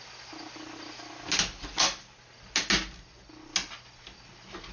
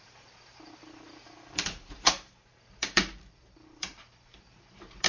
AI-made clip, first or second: second